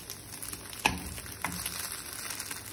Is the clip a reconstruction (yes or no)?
no